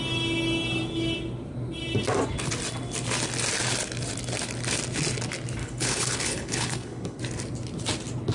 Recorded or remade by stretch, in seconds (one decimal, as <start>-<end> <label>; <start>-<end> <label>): 0.0-5.6 recorded; 5.6-7.2 remade; 7.2-8.3 recorded